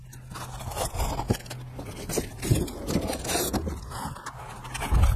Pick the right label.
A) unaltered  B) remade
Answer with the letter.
A